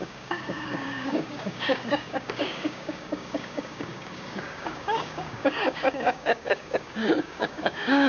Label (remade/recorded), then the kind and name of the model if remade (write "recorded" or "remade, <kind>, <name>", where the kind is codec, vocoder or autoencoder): remade, codec, DAC